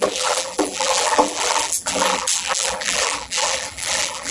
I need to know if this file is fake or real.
fake